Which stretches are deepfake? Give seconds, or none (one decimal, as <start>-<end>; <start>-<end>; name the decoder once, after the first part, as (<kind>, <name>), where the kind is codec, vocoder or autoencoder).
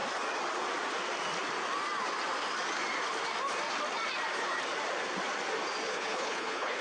5.9-6.8 (codec, HILCodec)